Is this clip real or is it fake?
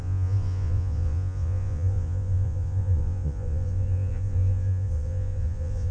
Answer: fake